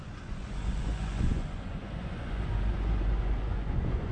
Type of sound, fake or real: fake